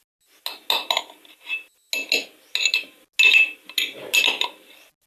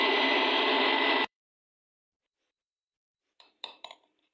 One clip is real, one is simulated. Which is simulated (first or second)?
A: second